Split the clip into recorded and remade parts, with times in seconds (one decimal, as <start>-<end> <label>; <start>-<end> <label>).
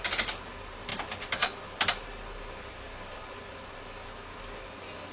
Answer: 0.0-5.1 recorded